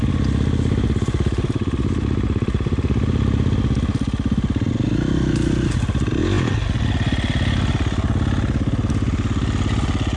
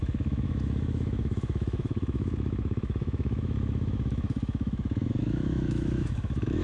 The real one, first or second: first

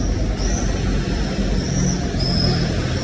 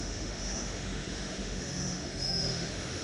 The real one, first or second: first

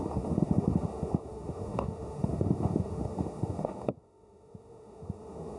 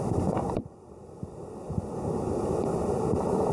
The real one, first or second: second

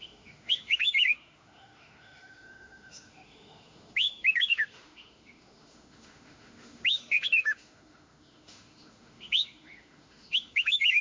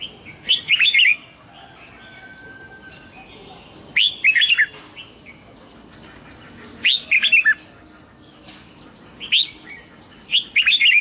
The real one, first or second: second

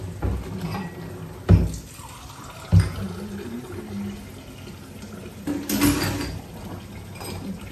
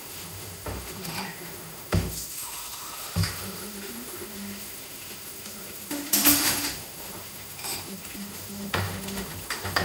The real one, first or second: first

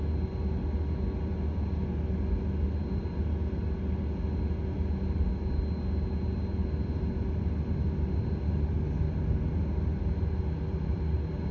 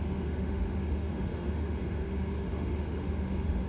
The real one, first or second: first